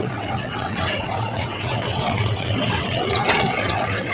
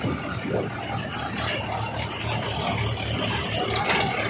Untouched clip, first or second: second